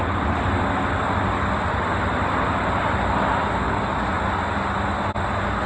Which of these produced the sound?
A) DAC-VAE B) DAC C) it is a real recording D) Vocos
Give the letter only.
C